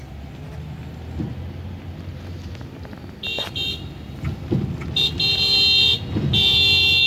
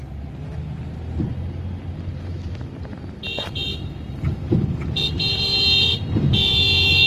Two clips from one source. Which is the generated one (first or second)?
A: second